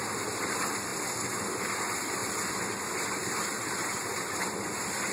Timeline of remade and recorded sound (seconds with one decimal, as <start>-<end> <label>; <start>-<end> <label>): 0.0-0.9 remade; 0.9-1.6 recorded; 1.6-2.2 remade; 2.2-2.8 recorded; 2.8-5.1 remade